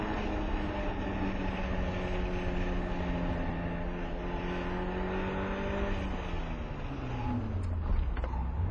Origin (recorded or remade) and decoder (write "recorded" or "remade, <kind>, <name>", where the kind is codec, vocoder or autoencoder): recorded